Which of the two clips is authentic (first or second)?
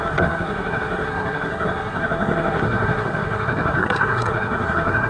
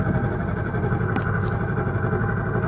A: second